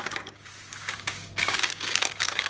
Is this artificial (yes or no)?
yes